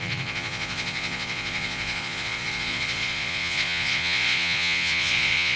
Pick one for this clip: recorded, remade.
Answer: remade